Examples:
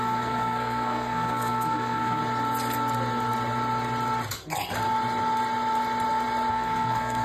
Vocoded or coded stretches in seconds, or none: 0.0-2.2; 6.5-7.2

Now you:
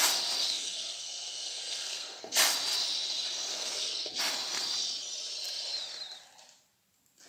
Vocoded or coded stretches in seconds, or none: 0.4-2.4; 3.5-4.2

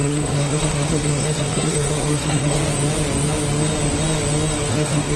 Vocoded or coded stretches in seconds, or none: 0.0-2.6; 4.7-5.2

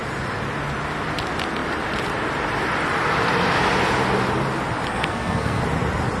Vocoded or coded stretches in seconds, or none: 4.9-5.6